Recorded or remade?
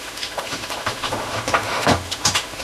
remade